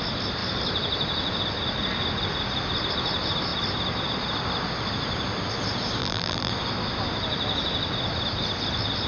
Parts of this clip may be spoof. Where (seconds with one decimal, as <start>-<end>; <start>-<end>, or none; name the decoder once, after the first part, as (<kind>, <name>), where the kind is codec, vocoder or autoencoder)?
6.0-6.5 (vocoder, BigVGAN v2)